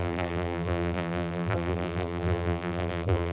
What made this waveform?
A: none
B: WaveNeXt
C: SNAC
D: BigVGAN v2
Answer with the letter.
D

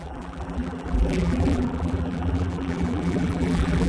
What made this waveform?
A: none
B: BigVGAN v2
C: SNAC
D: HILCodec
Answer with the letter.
B